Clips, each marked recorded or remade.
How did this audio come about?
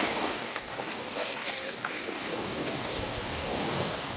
remade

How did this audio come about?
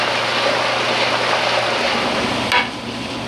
recorded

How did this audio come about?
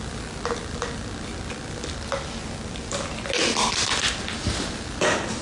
recorded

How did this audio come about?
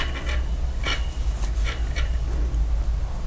recorded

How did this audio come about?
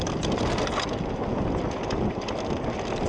recorded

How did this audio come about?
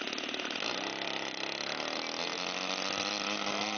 recorded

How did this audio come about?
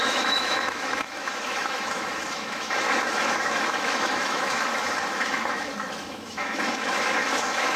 remade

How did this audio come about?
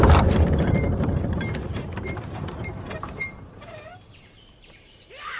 remade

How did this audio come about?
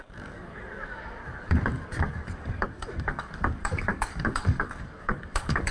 remade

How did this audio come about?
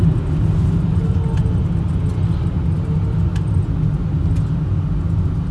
recorded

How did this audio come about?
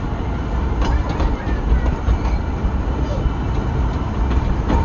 recorded